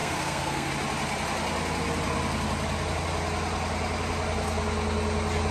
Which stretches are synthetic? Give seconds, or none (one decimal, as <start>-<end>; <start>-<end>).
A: 0.0-0.7